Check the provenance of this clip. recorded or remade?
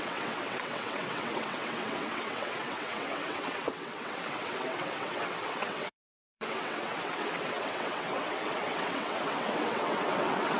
remade